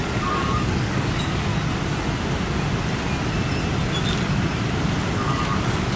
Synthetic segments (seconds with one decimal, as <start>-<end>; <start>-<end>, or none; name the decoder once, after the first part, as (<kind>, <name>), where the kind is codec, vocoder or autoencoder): 0.0-1.5 (codec, DAC); 5.1-6.0